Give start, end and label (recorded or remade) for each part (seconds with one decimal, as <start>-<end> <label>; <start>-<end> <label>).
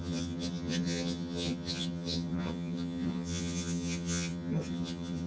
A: 0.0-5.3 remade